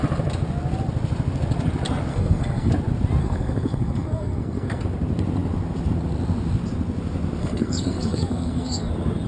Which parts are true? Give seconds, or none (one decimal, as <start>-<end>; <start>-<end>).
0.0-2.1; 2.7-3.2; 4.8-7.4; 8.9-9.3